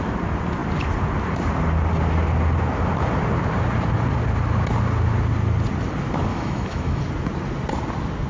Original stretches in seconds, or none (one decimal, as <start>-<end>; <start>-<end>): 0.0-6.3; 7.0-8.3